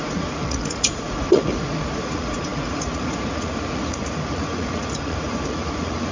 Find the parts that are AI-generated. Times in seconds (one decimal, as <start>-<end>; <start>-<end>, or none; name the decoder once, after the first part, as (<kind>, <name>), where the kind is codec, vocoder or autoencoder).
0.0-6.1 (vocoder, Vocos)